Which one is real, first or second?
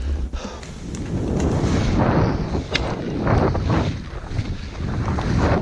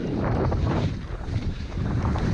first